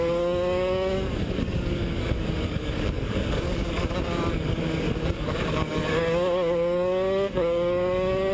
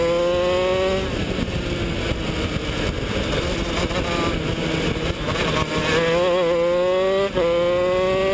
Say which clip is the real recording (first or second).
second